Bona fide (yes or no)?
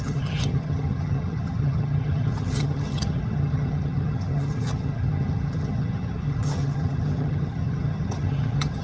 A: no